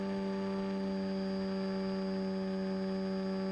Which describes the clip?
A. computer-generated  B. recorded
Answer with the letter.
B